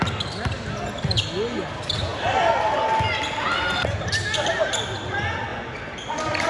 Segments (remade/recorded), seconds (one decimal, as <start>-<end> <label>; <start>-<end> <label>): 0.0-6.5 recorded